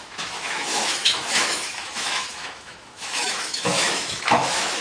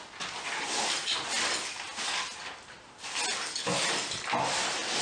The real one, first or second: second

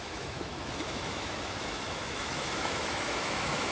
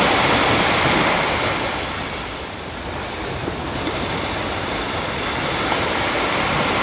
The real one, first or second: second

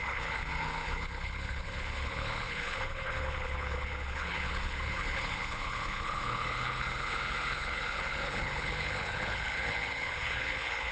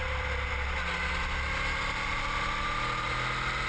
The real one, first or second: second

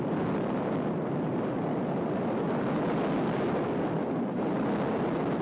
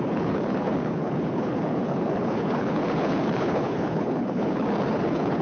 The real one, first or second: first